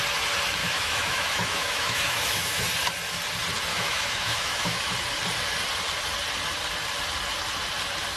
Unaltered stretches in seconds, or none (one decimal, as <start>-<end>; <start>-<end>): 0.0-0.6; 2.6-3.7; 4.9-8.2